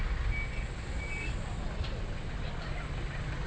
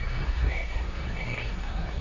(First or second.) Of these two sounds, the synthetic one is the second